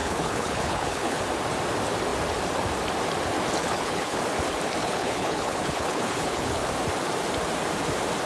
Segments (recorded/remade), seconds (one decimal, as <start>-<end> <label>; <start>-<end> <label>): 0.0-1.2 remade; 1.2-3.6 recorded; 3.6-4.2 remade; 4.2-4.8 recorded; 4.8-6.7 remade; 6.7-8.3 recorded